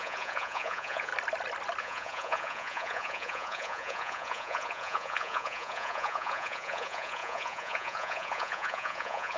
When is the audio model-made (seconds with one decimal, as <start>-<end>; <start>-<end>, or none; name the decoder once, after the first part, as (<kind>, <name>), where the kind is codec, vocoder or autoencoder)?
0.0-1.1 (vocoder, Vocos); 1.8-9.4